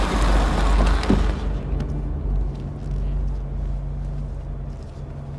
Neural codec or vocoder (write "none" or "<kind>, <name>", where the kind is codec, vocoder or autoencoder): none